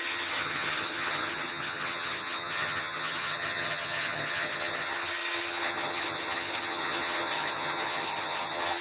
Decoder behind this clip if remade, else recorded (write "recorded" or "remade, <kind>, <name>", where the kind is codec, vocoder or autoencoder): remade, vocoder, HiFi-GAN